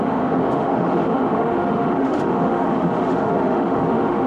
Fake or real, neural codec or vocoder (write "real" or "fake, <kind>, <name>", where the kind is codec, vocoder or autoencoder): fake, autoencoder, DAC-VAE